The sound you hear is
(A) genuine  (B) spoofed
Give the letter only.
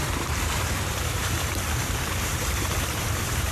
B